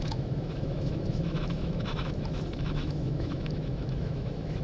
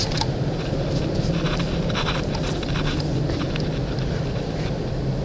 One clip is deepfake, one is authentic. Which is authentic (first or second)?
second